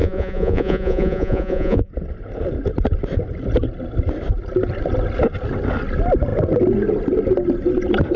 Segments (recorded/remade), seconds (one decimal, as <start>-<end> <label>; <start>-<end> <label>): 0.0-1.9 remade; 1.9-8.2 recorded